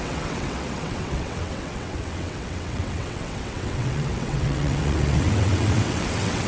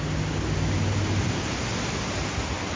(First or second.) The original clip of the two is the second